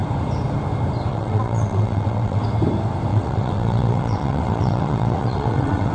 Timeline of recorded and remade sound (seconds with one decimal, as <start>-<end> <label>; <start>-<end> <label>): 0.0-1.1 recorded; 1.1-2.4 remade; 2.4-3.1 recorded; 3.1-5.9 remade